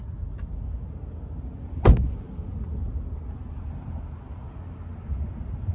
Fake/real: real